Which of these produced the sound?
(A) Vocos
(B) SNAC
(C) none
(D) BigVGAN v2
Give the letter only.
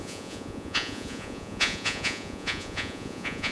A